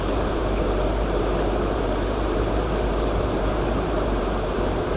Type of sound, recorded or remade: remade